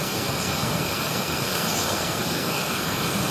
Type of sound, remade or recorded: remade